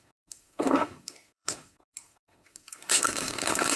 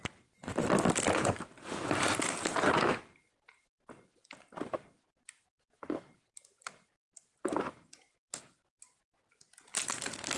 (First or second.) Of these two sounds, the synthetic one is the first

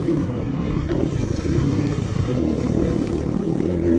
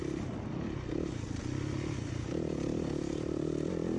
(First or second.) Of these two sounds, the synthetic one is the first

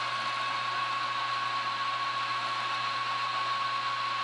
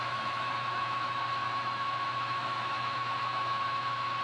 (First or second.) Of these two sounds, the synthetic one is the second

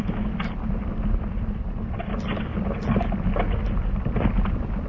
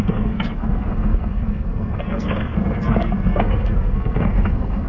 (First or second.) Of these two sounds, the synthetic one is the second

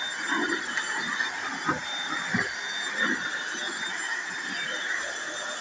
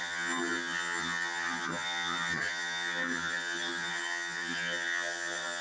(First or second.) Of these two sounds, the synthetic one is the second